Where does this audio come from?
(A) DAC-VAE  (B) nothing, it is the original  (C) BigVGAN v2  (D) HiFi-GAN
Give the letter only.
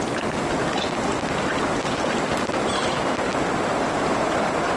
B